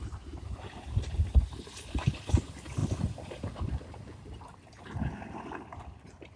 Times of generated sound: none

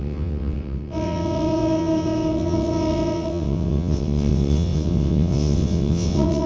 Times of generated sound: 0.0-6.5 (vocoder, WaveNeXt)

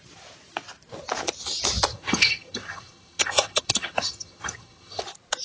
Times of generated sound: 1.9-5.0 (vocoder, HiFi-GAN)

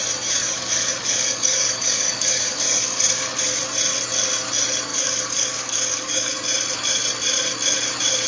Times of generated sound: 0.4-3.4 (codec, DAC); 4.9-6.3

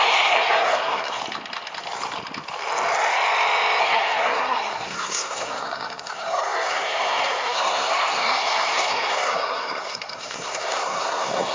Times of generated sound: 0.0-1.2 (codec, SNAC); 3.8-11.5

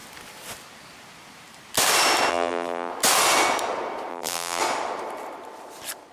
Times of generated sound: 2.3-2.9 (vocoder, BigVGAN v2); 4.1-4.6